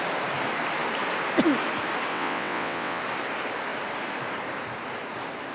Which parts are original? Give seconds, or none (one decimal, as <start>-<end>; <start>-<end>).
0.0-2.1; 3.0-5.5

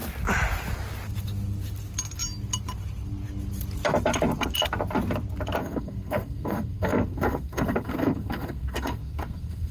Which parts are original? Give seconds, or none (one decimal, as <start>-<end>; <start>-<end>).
0.0-5.6